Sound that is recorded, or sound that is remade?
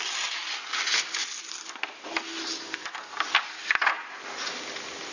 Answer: recorded